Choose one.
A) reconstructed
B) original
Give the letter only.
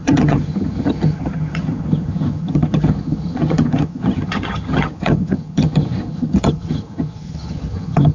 A